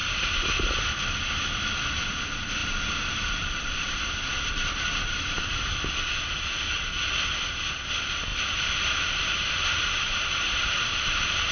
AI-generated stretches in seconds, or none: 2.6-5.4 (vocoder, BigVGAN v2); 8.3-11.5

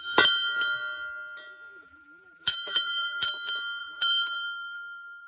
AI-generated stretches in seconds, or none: 1.8-3.3 (vocoder, BigVGAN v2); 3.8-5.3

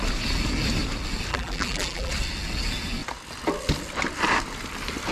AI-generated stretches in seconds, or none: 1.3-2.1 (vocoder, BigVGAN v2)

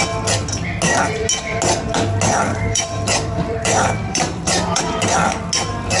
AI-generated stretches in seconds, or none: 2.5-4.8 (vocoder, BigVGAN v2)

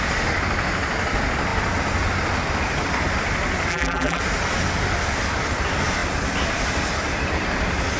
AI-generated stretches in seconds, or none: 3.7-4.2 (vocoder, BigVGAN v2)

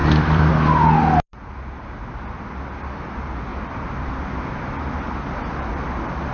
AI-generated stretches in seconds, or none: 0.0-0.5 (vocoder, BigVGAN v2); 3.5-4.1